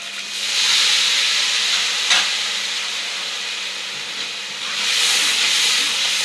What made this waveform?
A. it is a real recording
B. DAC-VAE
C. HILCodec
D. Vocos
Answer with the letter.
A